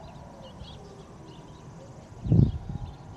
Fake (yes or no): no